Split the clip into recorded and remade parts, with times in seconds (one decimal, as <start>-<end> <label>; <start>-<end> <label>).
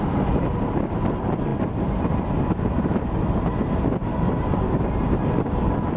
0.0-6.0 recorded